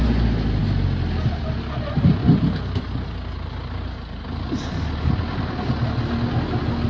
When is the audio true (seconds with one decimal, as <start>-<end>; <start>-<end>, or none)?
0.0-6.9